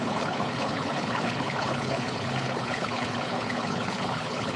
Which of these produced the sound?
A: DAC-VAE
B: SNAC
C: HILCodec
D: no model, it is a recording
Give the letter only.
C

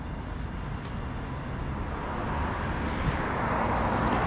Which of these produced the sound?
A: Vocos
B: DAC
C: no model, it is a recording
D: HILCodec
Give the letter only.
C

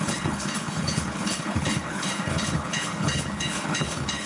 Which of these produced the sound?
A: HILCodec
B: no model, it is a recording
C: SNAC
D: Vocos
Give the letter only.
A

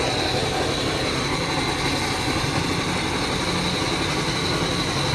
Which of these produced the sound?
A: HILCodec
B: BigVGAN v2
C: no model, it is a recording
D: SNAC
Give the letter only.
C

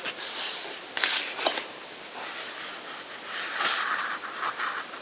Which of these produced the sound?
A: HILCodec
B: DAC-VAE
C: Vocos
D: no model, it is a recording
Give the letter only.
D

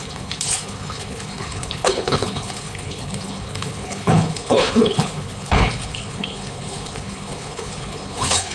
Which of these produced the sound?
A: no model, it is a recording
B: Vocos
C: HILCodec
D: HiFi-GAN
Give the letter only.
C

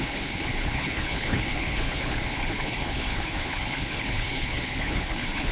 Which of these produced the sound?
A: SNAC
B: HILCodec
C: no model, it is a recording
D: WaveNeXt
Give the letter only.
B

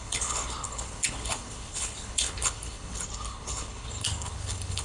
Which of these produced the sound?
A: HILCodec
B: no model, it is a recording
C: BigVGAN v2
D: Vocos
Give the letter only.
A